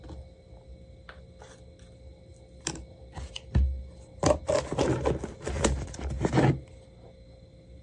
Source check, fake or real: real